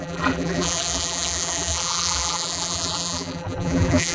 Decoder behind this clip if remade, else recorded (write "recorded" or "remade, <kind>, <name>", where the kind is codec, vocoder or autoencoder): remade, vocoder, BigVGAN v2